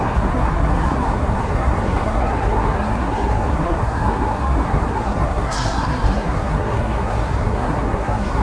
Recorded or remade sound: remade